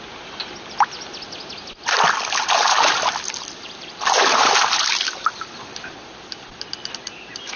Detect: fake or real real